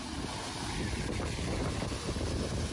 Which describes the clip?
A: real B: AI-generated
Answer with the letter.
A